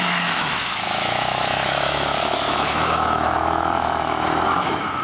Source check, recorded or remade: remade